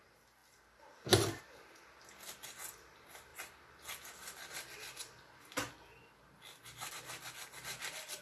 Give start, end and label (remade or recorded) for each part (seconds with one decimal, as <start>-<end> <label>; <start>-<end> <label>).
0.0-8.2 recorded